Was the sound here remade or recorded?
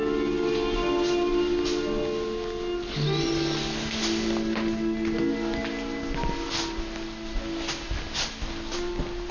recorded